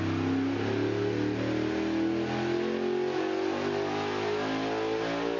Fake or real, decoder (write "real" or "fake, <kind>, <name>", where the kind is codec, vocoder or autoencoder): real